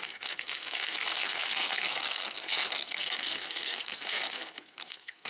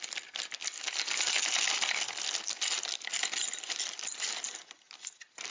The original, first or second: second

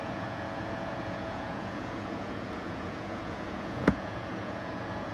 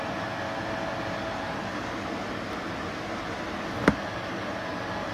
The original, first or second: second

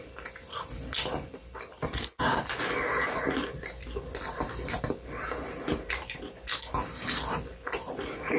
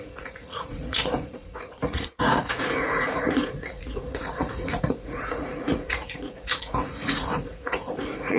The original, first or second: first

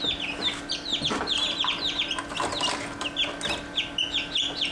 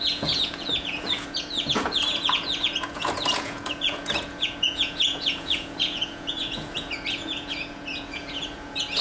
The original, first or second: first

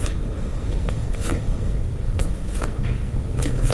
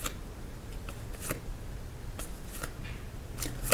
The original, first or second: second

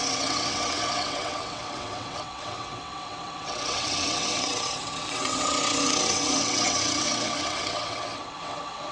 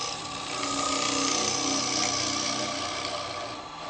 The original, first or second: second